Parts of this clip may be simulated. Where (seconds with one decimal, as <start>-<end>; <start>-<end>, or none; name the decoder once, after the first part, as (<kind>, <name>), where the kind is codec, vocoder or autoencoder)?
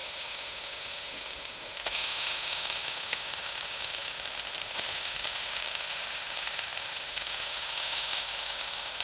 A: 0.0-9.0 (autoencoder, DAC-VAE)